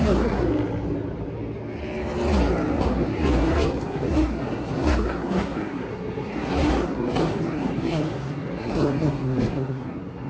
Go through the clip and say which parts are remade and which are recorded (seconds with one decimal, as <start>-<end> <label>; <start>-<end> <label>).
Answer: 0.0-0.5 remade; 0.5-2.8 recorded; 2.8-10.3 remade